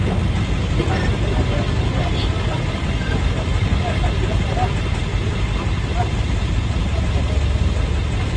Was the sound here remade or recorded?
recorded